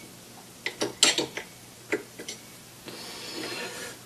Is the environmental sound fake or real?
real